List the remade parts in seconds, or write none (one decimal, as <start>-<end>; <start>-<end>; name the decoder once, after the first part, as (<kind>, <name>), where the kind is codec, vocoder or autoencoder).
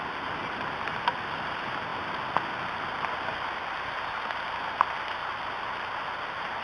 none